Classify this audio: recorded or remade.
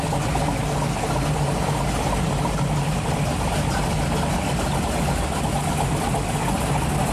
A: recorded